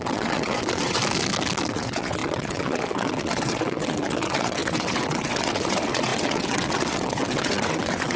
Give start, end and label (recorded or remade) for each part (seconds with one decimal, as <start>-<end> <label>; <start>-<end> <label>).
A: 0.0-1.0 remade; 1.0-1.7 recorded; 1.7-8.2 remade